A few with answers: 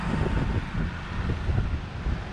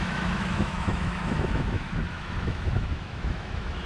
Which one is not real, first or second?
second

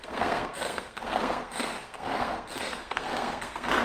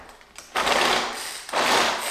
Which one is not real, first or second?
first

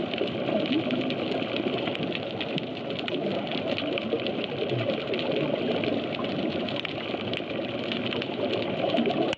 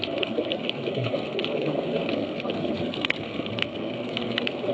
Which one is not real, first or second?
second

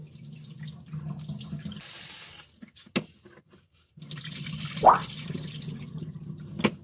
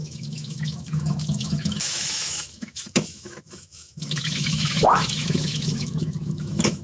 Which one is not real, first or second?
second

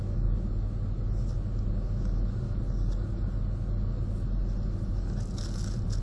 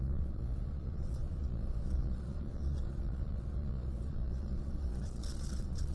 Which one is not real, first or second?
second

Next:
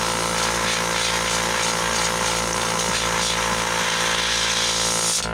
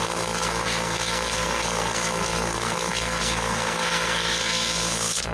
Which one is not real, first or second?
second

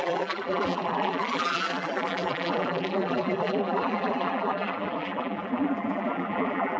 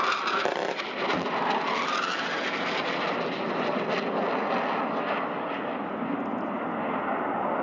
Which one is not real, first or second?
first